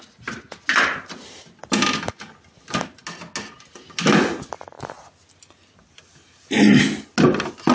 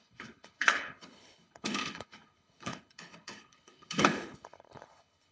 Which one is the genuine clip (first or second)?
first